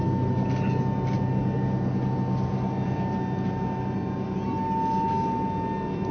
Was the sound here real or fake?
real